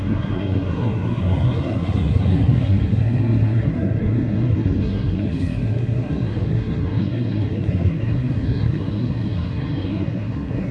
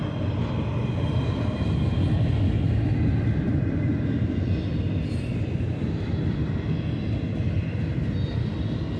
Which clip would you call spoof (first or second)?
first